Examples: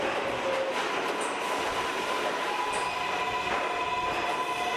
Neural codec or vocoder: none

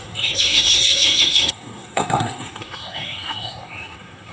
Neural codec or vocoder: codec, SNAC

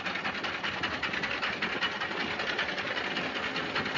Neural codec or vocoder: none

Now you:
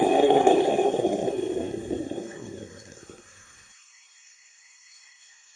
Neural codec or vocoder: codec, SNAC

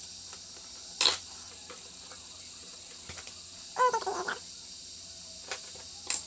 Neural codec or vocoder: none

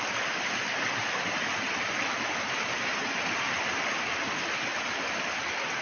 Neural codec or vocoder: none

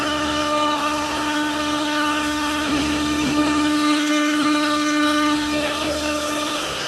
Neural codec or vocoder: codec, SNAC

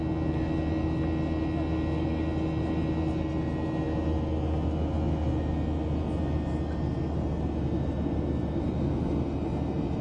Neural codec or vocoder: none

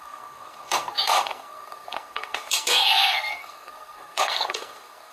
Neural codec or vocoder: codec, SNAC